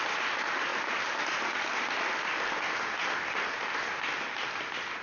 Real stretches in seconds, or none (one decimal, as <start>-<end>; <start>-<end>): 0.0-5.0